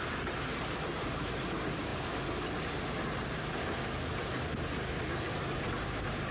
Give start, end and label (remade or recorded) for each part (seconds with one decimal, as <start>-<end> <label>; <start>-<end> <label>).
0.0-6.3 recorded